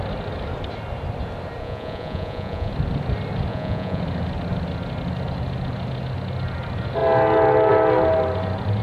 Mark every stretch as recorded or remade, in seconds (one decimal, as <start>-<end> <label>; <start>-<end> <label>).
0.0-1.6 recorded; 1.6-2.7 remade; 2.7-3.5 recorded; 3.5-4.0 remade; 4.0-8.8 recorded